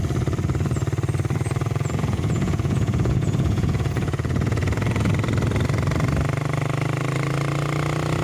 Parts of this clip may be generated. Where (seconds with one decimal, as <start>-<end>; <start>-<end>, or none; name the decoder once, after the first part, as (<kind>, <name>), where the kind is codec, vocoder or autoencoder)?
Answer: 1.6-5.1 (vocoder, Vocos)